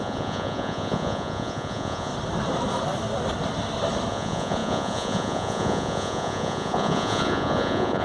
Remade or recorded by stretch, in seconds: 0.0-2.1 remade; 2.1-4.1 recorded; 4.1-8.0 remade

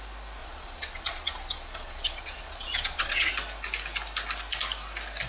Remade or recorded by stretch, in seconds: 0.0-0.4 recorded; 0.4-3.3 remade; 3.3-5.3 recorded

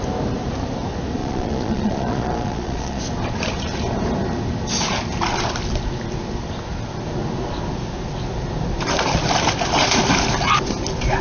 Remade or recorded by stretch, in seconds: 0.0-1.2 recorded; 1.2-3.0 remade; 3.0-11.2 recorded